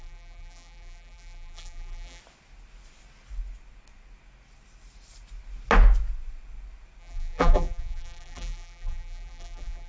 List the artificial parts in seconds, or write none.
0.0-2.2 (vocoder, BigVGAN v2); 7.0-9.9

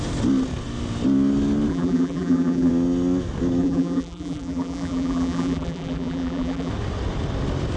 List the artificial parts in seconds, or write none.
1.7-2.7 (vocoder, BigVGAN v2); 3.6-6.7